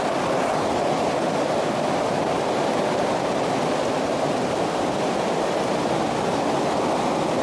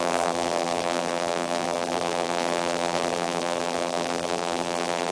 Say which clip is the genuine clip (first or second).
first